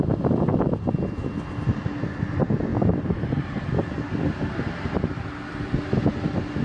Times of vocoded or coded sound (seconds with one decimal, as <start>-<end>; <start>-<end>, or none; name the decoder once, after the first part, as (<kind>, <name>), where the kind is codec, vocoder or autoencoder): none